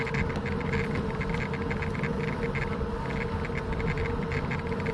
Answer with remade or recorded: recorded